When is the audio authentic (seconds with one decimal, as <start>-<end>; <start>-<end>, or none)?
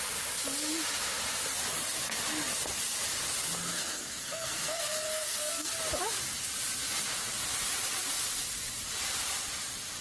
0.0-3.7; 5.8-10.0